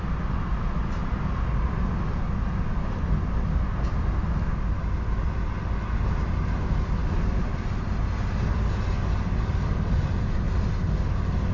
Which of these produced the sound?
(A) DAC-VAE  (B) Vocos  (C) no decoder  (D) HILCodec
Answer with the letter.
C